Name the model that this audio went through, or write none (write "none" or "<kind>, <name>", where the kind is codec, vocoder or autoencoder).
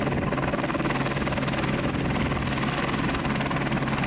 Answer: none